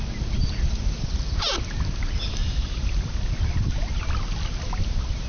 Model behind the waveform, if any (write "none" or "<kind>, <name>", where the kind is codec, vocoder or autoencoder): none